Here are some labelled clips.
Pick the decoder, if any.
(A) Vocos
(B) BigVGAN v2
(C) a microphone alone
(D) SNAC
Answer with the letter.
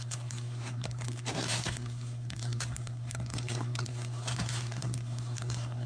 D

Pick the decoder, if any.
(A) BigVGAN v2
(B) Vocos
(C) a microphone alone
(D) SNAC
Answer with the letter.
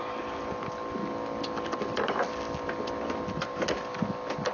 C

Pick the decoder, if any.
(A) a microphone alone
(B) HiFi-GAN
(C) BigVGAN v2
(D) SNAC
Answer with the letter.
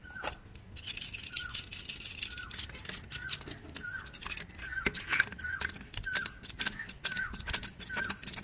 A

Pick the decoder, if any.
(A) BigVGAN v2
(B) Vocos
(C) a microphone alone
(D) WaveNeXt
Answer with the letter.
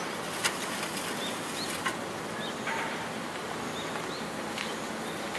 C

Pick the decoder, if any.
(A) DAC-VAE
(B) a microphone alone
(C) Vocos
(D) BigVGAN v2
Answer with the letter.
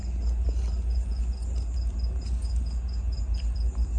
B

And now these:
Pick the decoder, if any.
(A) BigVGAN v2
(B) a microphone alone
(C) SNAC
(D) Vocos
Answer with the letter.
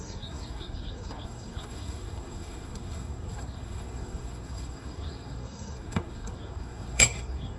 C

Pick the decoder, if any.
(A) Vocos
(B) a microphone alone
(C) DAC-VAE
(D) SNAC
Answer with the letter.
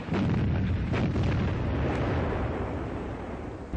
B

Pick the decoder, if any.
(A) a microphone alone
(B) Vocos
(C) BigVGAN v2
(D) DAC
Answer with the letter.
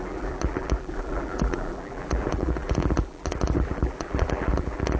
C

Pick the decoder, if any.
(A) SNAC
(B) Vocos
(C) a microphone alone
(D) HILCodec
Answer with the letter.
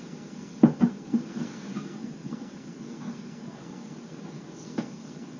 A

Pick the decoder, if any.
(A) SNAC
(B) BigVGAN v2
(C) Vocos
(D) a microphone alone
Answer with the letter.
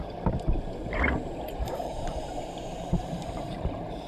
B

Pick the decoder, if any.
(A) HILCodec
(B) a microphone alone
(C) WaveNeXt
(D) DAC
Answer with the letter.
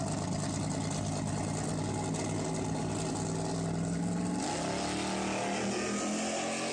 B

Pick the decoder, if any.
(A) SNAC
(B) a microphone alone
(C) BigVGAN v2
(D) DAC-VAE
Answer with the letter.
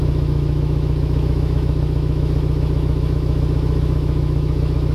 D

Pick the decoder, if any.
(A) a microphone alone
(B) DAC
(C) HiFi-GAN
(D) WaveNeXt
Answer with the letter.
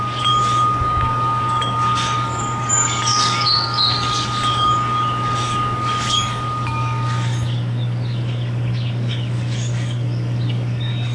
B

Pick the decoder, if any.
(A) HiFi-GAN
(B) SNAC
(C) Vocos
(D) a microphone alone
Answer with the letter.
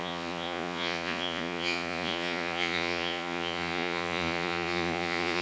C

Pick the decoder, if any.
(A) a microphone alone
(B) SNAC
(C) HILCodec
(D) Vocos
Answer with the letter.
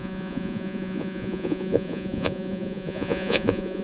D